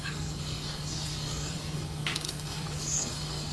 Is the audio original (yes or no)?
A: no